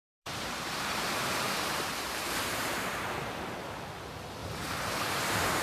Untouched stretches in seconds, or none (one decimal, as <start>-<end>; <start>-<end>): 3.4-4.4